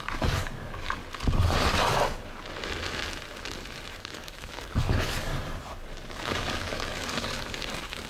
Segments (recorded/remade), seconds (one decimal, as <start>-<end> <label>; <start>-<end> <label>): 0.0-1.0 remade; 1.0-4.0 recorded; 4.0-5.3 remade; 5.3-6.1 recorded; 6.1-8.1 remade